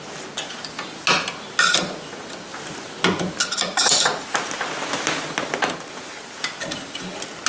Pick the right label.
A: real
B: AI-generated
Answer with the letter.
A